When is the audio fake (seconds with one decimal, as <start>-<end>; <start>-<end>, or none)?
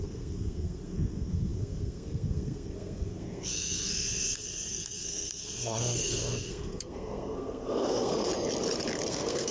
0.0-8.3; 9.1-9.5